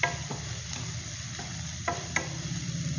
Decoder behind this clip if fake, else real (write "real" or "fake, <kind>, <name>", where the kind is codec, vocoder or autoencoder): real